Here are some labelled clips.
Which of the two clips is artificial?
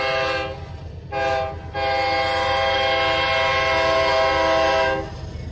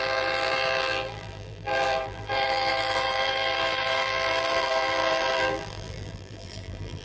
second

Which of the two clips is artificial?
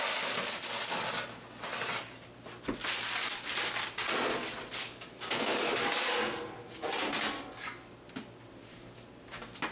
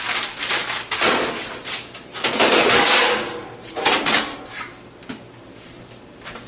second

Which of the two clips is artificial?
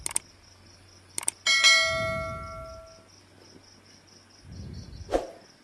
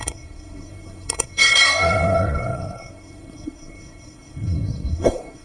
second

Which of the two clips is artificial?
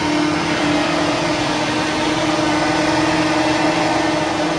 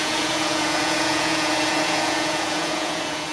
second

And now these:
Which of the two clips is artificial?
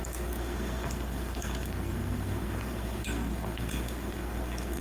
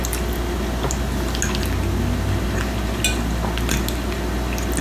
first